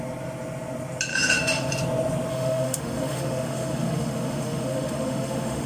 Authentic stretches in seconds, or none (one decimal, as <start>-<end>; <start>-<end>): 0.0-1.1; 1.7-2.3

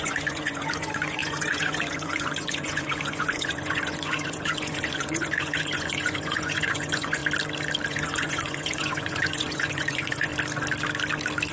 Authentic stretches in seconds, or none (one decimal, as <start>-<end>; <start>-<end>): 7.2-7.9; 10.3-11.5

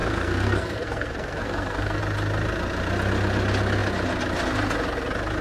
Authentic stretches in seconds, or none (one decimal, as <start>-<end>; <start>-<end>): 2.0-5.4

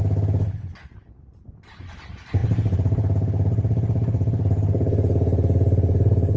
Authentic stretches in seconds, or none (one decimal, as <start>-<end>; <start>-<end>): 0.0-6.4